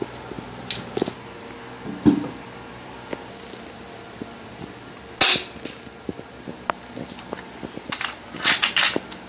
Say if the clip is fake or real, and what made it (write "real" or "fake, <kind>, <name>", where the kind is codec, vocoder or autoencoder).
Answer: real